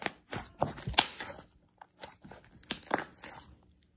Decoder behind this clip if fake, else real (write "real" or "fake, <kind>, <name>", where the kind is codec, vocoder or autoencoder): real